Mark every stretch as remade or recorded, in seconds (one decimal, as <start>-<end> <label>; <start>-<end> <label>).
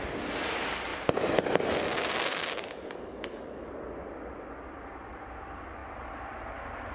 0.0-2.3 recorded; 2.3-3.7 remade; 3.7-6.9 recorded